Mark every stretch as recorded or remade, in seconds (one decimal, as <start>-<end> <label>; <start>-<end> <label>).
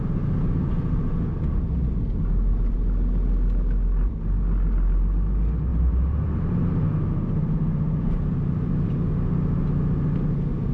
0.0-5.7 recorded; 5.7-8.7 remade; 8.7-10.7 recorded